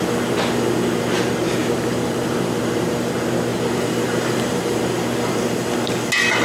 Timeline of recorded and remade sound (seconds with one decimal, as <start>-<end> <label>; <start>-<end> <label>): 0.0-1.6 recorded; 1.6-3.1 remade; 3.1-3.5 recorded; 3.5-4.8 remade; 4.8-6.4 recorded